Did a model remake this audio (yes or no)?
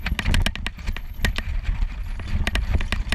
no